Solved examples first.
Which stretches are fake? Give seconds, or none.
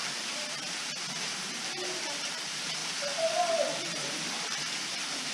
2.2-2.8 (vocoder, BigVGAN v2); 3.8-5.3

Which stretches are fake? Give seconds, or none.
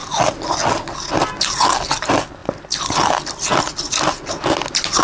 none